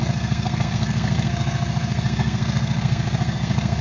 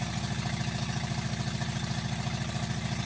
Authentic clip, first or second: second